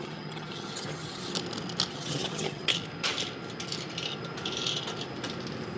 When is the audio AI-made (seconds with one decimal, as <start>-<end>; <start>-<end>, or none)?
0.0-1.2; 1.9-2.7